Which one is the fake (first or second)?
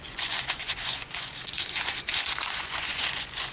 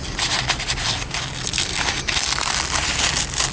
first